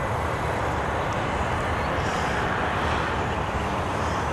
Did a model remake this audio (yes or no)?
no